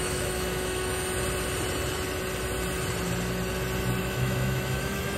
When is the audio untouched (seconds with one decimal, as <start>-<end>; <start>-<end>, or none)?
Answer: 0.9-4.0